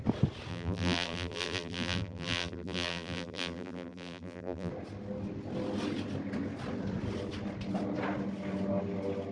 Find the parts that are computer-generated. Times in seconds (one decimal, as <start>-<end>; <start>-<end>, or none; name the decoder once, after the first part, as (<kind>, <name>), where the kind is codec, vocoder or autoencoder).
0.5-4.7 (vocoder, BigVGAN v2)